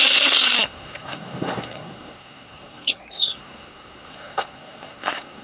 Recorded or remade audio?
remade